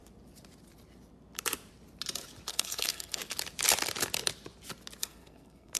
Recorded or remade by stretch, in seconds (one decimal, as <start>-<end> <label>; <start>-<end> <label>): 0.0-2.5 recorded; 2.5-3.2 remade; 3.2-5.0 recorded; 5.0-5.8 remade